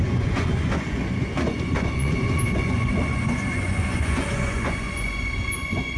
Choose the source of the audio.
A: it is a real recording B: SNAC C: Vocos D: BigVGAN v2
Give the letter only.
C